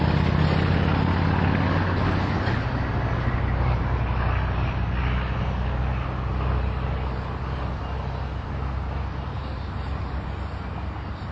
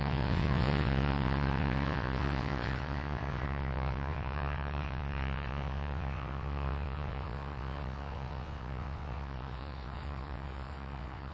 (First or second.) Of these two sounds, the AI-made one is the second